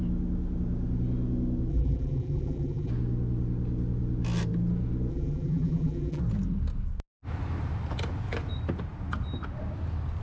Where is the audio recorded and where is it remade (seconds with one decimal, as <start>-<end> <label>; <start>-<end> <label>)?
0.0-1.7 recorded; 1.7-2.9 remade; 2.9-5.1 recorded; 5.1-6.2 remade; 6.2-10.2 recorded